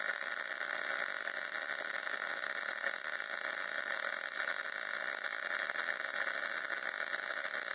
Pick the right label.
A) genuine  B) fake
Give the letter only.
A